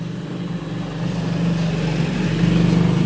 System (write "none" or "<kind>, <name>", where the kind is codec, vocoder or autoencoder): none